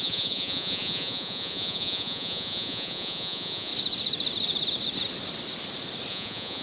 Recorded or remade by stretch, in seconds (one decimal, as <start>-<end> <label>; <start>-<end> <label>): 0.0-3.7 remade; 3.7-6.1 recorded; 6.1-6.6 remade